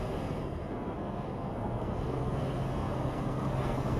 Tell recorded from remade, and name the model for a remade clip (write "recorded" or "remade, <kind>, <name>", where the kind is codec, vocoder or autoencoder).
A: remade, codec, SNAC